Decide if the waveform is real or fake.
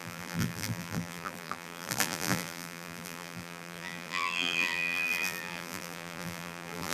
fake